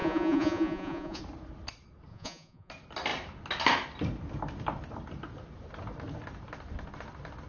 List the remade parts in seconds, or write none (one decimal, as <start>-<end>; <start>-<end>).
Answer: 0.0-1.2; 2.1-2.7